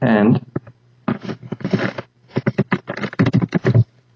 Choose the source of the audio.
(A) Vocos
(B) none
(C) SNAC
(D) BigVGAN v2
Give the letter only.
D